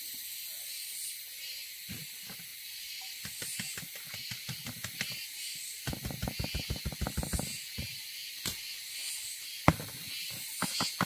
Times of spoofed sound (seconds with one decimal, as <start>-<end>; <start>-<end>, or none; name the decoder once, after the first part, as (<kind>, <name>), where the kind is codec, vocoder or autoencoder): 2.5-3.2 (vocoder, BigVGAN v2)